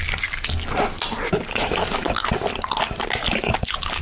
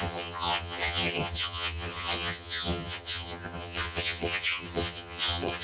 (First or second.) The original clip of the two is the first